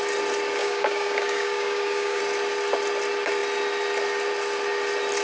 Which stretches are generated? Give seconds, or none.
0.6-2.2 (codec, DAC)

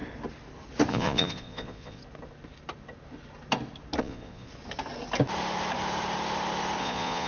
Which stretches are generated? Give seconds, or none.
0.9-2.0 (vocoder, Vocos); 4.0-4.5; 6.8-7.3

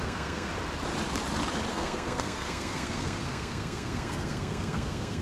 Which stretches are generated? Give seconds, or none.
0.0-0.5 (codec, SNAC); 1.7-5.2

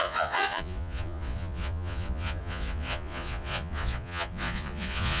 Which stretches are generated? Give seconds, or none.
0.0-5.2 (vocoder, Vocos)